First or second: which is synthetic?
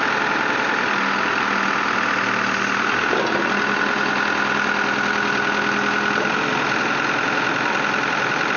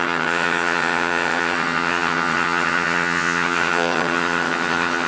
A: second